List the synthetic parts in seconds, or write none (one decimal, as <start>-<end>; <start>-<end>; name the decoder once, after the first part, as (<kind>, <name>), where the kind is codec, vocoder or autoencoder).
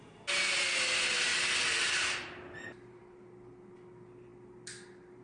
none